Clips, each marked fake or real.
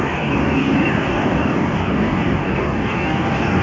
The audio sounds fake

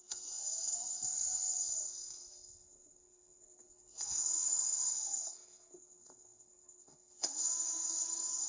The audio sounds fake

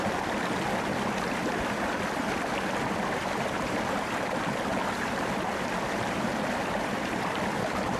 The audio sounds real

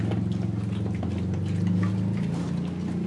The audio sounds real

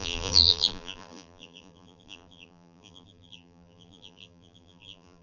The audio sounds fake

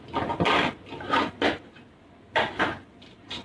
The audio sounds real